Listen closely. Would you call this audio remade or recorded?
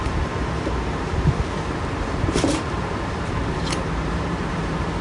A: remade